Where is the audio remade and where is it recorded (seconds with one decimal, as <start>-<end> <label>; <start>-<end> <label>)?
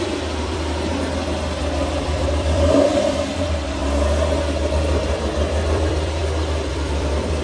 0.0-0.9 remade; 0.9-1.6 recorded; 1.6-3.8 remade; 3.8-5.0 recorded; 5.0-6.2 remade; 6.2-6.7 recorded; 6.7-7.4 remade